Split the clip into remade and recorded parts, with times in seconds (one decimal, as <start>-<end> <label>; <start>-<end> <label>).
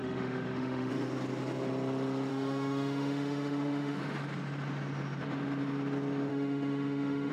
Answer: 0.0-0.9 remade; 0.9-2.3 recorded; 2.3-4.0 remade; 4.0-6.3 recorded; 6.3-7.3 remade